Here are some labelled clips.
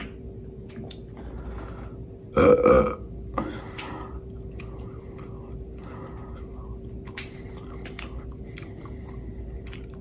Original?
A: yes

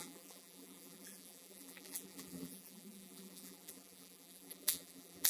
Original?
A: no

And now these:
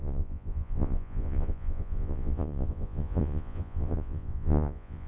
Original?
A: no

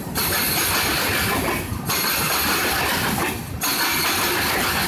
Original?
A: yes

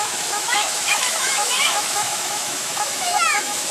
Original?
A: no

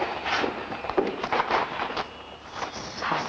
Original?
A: no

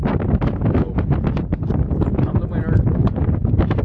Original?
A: yes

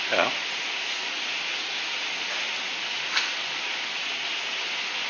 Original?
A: yes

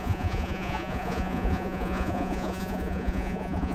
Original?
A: no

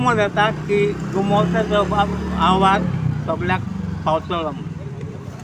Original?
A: yes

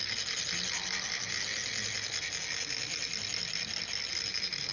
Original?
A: yes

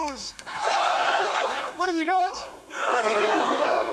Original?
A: no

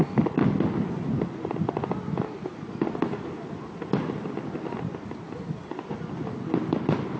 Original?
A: yes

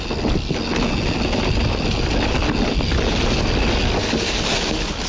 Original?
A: yes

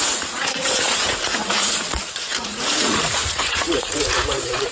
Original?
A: no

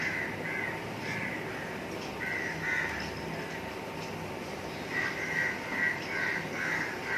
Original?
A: yes